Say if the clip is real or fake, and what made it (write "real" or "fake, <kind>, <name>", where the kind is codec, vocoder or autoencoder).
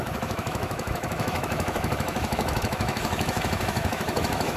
fake, autoencoder, DAC-VAE